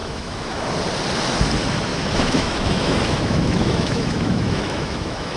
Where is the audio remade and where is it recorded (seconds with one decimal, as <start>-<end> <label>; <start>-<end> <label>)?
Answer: 0.0-0.6 remade; 0.6-1.9 recorded; 1.9-5.4 remade